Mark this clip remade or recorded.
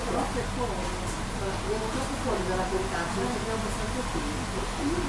recorded